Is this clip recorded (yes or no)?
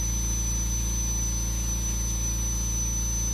yes